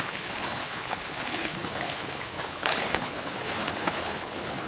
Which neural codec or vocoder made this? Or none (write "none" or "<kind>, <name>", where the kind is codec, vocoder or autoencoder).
codec, HILCodec